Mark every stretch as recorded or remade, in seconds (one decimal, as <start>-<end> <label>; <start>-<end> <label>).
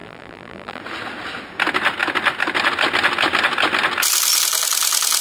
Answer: 0.0-0.8 remade; 0.8-5.2 recorded